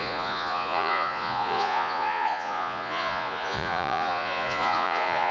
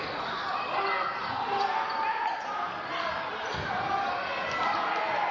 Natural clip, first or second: second